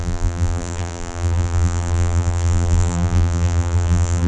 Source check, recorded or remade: remade